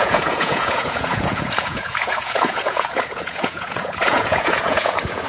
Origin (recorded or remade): remade